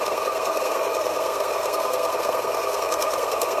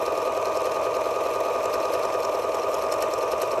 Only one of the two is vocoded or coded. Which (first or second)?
first